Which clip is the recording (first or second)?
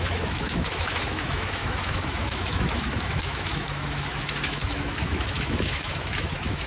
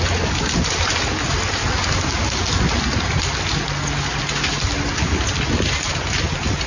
second